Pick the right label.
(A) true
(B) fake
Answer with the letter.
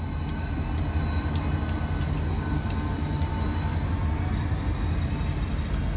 A